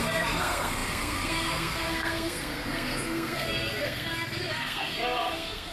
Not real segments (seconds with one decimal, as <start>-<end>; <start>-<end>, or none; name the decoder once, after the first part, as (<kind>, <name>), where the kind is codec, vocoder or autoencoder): 0.0-5.7 (codec, SNAC)